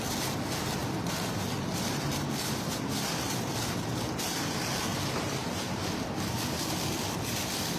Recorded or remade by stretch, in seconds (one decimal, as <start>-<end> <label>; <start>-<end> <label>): 0.0-0.8 recorded; 0.8-3.8 remade; 3.8-4.9 recorded; 4.9-7.1 remade; 7.1-7.8 recorded